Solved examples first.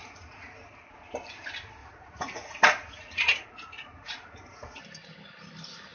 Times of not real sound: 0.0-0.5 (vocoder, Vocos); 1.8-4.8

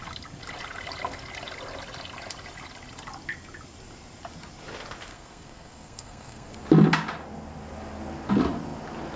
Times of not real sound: 5.1-6.5 (codec, SNAC)